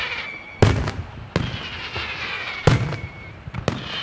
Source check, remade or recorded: recorded